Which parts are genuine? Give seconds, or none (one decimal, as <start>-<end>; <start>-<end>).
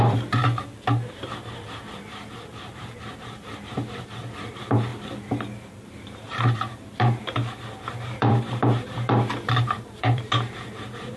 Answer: 0.4-1.1; 4.9-5.7